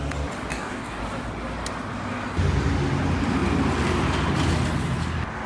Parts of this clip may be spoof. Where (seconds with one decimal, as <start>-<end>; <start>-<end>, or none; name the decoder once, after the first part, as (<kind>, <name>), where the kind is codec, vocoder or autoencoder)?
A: 0.5-1.0 (codec, DAC)

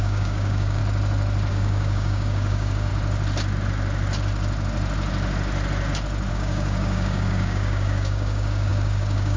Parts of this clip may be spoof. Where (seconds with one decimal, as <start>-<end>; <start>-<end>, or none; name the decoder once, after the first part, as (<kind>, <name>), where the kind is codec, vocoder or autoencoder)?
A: 0.0-0.8 (codec, DAC); 1.5-2.9; 6.3-9.4